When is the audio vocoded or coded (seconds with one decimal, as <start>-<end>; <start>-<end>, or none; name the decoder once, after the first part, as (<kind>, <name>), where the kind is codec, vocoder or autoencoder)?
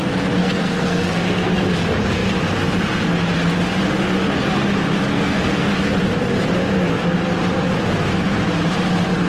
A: 0.4-1.7 (codec, SNAC); 5.1-5.7